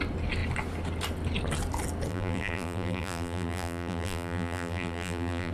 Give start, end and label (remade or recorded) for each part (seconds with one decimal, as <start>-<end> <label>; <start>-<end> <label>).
0.0-2.1 recorded; 2.1-5.5 remade